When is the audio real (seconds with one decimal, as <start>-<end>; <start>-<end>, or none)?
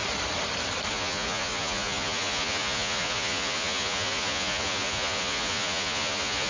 0.0-0.9